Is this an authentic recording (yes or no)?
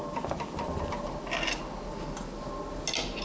yes